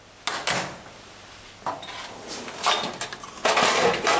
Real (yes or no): yes